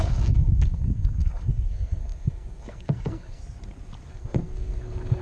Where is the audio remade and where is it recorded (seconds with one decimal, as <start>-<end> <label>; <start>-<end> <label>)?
0.0-3.4 remade; 3.4-4.1 recorded; 4.1-5.2 remade